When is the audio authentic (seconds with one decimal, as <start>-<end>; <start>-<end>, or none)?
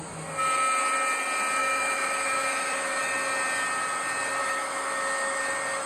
0.0-1.6; 3.0-4.4; 5.4-5.9